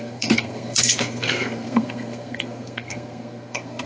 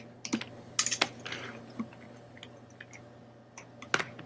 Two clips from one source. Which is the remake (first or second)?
first